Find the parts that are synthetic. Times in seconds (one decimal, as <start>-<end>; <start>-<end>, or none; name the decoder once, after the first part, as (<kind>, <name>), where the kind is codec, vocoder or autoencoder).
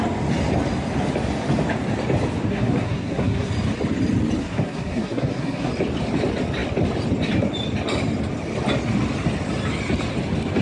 2.5-3.5 (codec, SNAC); 4.4-5.7